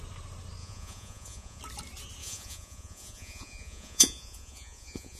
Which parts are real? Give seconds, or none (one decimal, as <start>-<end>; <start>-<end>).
0.0-0.6; 1.6-2.2